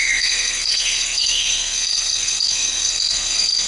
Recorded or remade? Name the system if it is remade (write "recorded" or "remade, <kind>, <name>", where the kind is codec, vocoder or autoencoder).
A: remade, codec, SNAC